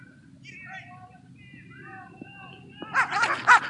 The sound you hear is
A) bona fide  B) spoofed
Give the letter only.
A